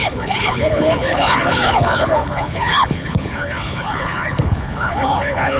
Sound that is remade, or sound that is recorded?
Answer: remade